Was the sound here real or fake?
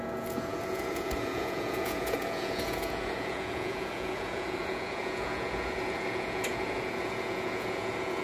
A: fake